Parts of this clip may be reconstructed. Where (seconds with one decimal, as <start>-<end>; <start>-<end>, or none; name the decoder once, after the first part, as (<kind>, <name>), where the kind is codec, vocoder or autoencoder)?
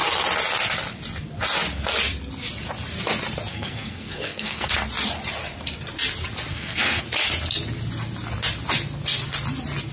3.5-4.7 (codec, SNAC); 6.5-7.0